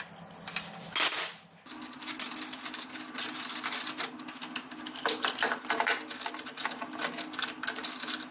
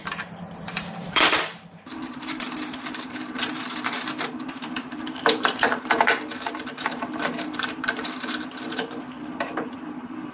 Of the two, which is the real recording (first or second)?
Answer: first